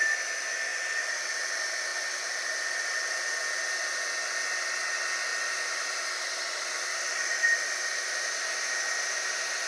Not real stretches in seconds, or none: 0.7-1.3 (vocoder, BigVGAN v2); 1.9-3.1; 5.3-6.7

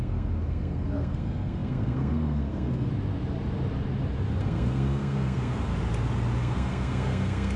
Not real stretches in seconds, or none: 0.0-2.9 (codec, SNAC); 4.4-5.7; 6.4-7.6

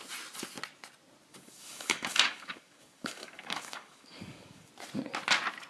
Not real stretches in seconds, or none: 1.3-4.7 (codec, DAC)

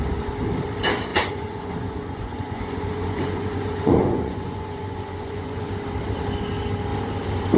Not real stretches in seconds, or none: 1.1-5.7 (vocoder, Vocos)

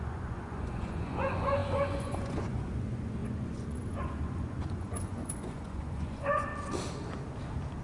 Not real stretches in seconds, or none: 0.0-6.5 (vocoder, Vocos)

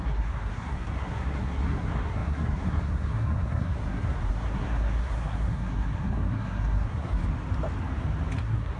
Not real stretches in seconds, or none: 0.0-7.2 (codec, SNAC); 8.4-8.8